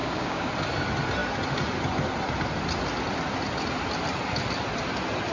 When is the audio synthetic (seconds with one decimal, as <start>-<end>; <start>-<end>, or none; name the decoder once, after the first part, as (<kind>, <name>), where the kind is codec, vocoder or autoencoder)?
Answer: 0.0-0.5 (codec, DAC)